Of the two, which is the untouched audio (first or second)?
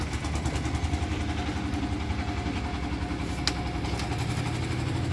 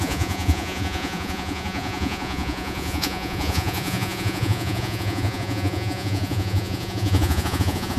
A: first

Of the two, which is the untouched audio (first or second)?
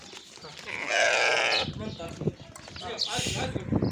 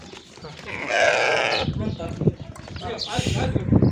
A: first